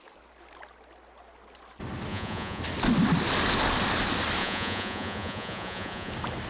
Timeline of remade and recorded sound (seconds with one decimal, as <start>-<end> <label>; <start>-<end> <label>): 0.0-2.1 recorded; 2.1-2.6 remade; 2.6-4.4 recorded; 4.4-6.1 remade; 6.1-6.5 recorded